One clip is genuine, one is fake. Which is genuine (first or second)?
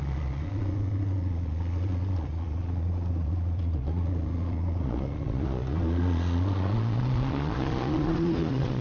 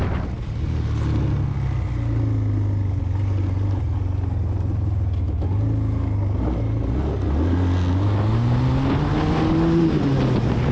second